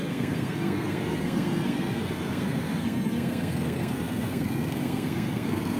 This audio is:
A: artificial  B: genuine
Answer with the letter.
A